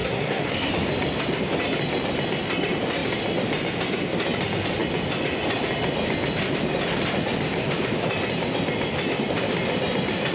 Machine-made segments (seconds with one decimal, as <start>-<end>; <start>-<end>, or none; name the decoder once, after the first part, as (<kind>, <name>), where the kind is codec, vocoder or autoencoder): 0.0-0.7 (codec, SNAC)